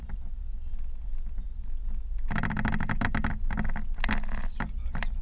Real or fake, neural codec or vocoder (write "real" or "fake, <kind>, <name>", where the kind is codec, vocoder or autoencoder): real